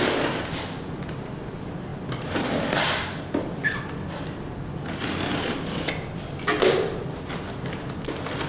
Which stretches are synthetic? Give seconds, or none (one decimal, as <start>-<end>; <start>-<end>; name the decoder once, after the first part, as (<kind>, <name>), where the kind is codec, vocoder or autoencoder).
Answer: none

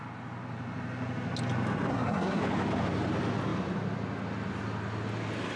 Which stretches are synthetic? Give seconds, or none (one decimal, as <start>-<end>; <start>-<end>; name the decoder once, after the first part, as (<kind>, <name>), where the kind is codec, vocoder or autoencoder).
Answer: 1.9-2.4 (codec, SNAC)

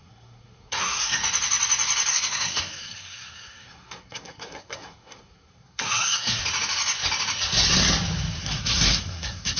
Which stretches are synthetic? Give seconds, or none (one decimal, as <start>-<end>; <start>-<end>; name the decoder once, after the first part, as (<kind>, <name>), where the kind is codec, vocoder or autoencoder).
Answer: 0.0-1.2 (codec, SNAC); 2.1-6.4; 8.4-9.6

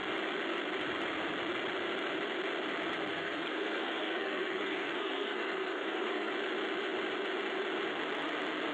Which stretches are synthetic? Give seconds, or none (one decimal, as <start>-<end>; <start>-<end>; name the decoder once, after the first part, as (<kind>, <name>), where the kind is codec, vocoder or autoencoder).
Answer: 3.1-6.3 (codec, SNAC)

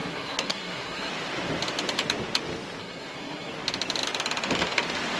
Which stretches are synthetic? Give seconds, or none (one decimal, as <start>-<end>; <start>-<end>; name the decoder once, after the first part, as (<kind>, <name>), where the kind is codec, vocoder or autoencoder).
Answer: 0.0-1.1 (codec, SNAC); 2.8-3.5

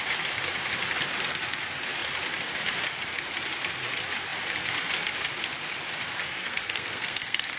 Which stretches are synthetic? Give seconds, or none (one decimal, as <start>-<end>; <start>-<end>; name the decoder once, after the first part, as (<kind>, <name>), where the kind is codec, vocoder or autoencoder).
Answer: 6.4-7.6 (codec, SNAC)

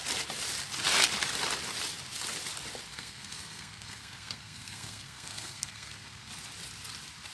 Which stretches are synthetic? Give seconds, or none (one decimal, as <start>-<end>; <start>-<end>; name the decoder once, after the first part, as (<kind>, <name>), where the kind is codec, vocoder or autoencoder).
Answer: 2.9-6.3 (codec, SNAC)